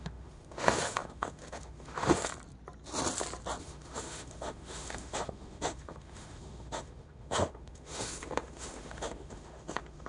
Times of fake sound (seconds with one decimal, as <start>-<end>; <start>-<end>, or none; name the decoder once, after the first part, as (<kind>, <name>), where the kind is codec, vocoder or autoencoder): 0.0-2.3 (autoencoder, DAC-VAE); 3.6-10.1